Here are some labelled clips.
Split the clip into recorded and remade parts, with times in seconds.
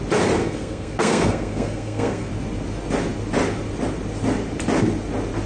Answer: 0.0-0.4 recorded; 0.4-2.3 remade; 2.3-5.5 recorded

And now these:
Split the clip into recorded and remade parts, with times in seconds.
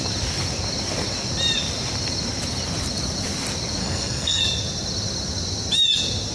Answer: 0.0-3.8 recorded; 3.8-4.4 remade; 4.4-6.3 recorded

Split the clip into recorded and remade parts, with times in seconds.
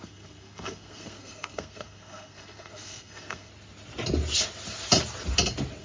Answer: 0.0-3.5 remade; 3.5-5.8 recorded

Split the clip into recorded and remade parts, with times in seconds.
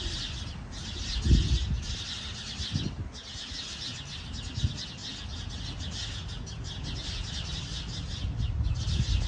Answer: 0.0-9.3 recorded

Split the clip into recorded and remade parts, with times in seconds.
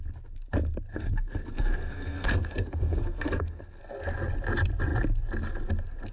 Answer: 0.0-0.9 recorded; 0.9-3.8 remade; 3.8-6.1 recorded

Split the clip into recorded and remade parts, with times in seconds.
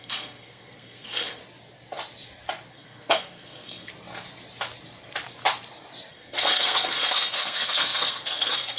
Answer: 0.0-1.4 remade; 1.4-2.7 recorded; 2.7-3.9 remade; 3.9-6.1 recorded; 6.1-8.8 remade